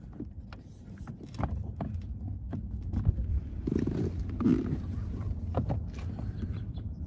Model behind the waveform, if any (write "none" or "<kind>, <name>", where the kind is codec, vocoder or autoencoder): none